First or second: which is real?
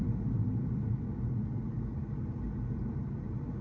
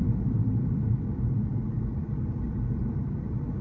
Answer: first